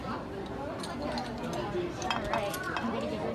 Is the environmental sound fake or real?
real